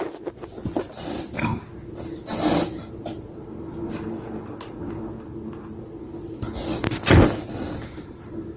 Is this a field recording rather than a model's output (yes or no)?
yes